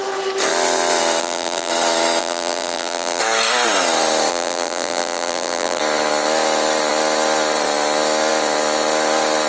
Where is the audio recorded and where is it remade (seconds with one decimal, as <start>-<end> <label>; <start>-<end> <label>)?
0.0-1.2 recorded; 1.2-1.7 remade; 1.7-2.2 recorded; 2.2-3.2 remade; 3.2-4.3 recorded; 4.3-5.8 remade; 5.8-9.5 recorded